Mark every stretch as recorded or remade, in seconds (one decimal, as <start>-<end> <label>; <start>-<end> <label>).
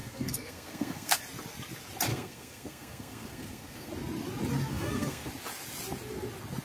0.0-1.2 remade; 1.2-2.1 recorded; 2.1-3.9 remade; 3.9-4.7 recorded; 4.7-5.3 remade; 5.3-6.6 recorded